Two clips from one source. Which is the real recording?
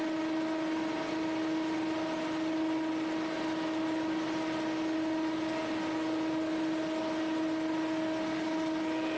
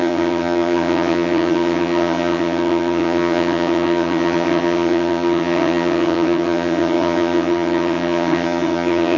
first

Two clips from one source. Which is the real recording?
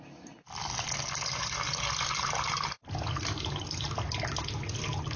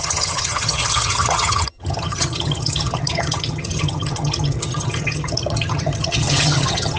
first